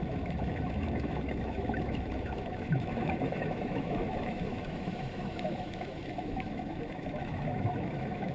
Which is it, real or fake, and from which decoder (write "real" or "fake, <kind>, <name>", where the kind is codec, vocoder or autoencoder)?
fake, autoencoder, DAC-VAE